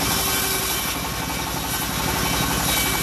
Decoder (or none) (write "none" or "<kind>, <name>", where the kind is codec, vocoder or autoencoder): none